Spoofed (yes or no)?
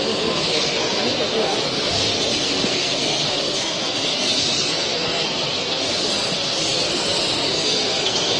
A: yes